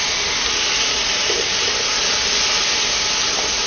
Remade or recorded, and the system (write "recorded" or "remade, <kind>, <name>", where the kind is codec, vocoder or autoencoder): recorded